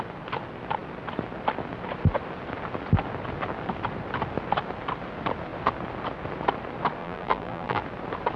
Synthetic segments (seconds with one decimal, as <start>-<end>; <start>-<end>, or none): 7.0-7.8